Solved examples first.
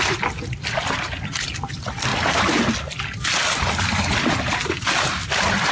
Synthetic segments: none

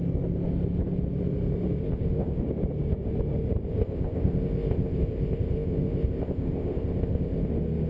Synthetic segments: 1.8-2.4 (codec, ZipCodec); 3.7-7.5

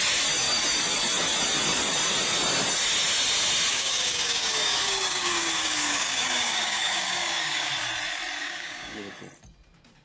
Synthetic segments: 3.7-7.7 (codec, DAC); 8.4-9.1

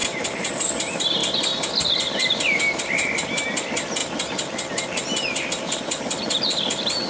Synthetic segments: 0.0-0.5 (vocoder, BigVGAN v2); 2.2-3.4

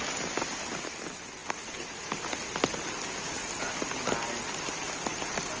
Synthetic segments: none

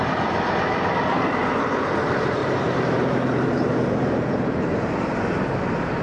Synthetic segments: 2.4-5.1 (vocoder, BigVGAN v2)

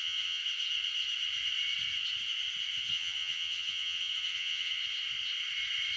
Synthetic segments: 0.0-0.4 (vocoder, HiFi-GAN); 2.9-4.8

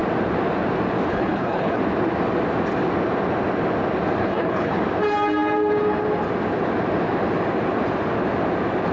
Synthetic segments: 1.1-1.8 (codec, HILCodec); 4.2-4.8